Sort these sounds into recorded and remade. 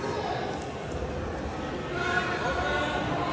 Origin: recorded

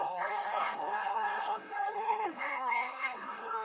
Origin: remade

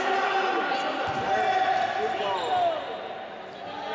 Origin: recorded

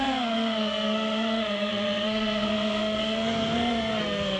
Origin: remade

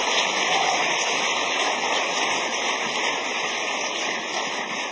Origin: remade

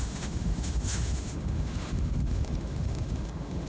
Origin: remade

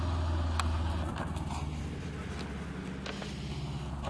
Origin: recorded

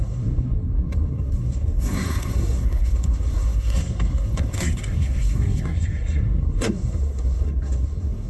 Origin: remade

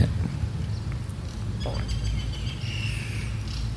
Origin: recorded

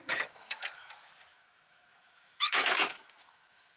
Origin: remade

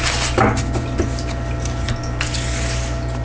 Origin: recorded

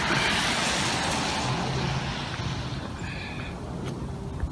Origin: recorded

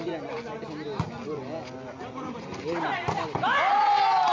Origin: recorded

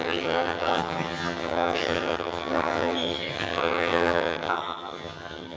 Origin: remade